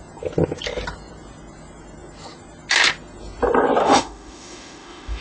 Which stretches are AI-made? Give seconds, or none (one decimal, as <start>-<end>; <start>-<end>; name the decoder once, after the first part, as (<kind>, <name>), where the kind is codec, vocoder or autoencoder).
3.8-5.2 (autoencoder, DAC-VAE)